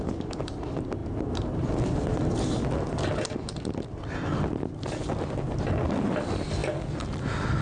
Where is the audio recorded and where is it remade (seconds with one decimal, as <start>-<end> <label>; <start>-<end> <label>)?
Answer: 0.0-7.6 recorded